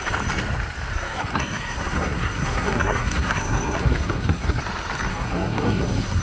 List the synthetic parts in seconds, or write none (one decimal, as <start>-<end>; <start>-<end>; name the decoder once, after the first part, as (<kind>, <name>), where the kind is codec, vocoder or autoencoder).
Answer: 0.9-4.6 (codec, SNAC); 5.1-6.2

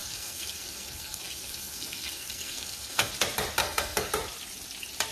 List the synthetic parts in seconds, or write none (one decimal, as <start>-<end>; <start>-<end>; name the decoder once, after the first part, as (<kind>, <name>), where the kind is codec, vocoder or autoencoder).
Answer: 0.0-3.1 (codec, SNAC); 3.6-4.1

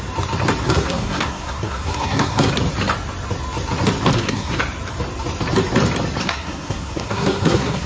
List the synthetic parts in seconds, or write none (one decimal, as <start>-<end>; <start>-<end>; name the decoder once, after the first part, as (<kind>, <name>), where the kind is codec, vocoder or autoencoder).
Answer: 0.6-2.5 (codec, SNAC); 4.1-4.6; 6.2-7.9